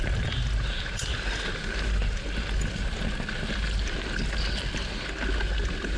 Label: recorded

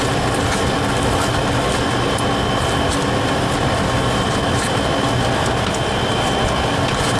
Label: recorded